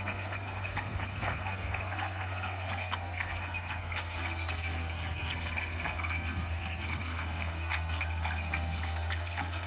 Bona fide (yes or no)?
no